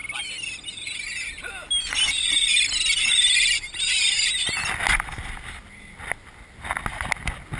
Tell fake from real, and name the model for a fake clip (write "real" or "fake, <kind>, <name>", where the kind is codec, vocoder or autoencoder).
real